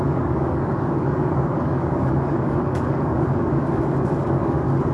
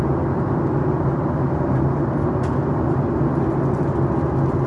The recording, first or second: second